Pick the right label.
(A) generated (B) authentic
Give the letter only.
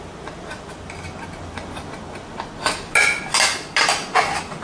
B